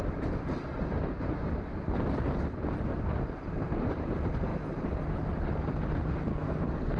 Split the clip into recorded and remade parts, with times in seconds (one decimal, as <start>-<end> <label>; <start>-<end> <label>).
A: 0.0-6.3 recorded; 6.3-7.0 remade